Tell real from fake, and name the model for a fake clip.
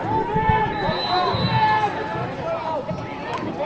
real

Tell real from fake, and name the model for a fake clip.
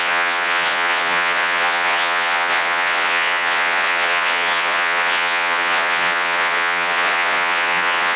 fake, vocoder, Vocos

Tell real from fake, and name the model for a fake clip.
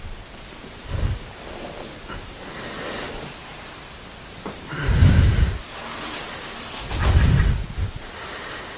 real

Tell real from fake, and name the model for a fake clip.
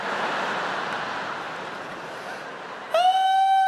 real